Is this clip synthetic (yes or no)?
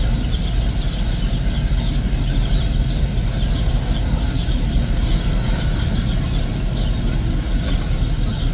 no